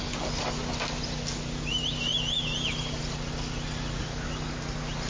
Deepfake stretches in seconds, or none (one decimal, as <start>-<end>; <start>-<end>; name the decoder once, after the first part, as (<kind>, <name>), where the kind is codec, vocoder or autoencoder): none